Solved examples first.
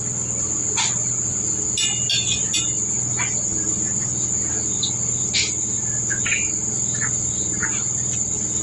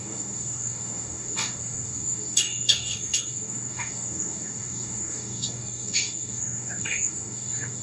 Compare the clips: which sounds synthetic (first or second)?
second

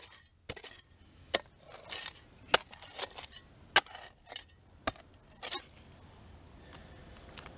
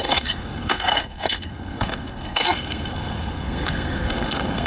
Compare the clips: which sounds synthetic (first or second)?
second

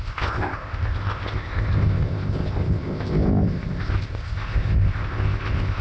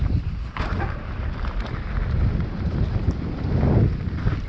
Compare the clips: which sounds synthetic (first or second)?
first